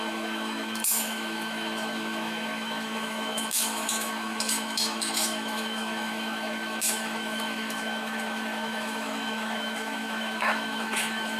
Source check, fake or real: fake